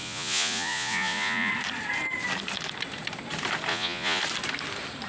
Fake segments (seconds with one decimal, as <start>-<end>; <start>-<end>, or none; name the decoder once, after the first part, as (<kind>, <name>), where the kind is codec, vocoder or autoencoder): 0.0-1.5 (vocoder, Vocos); 3.7-4.2